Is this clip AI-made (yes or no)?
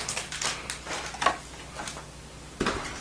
no